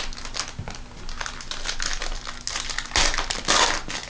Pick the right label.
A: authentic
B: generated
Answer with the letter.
A